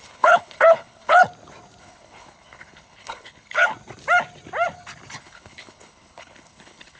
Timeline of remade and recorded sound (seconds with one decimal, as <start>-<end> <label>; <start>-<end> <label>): 0.0-1.2 remade; 1.2-1.8 recorded; 1.8-3.7 remade; 3.7-5.2 recorded; 5.2-7.0 remade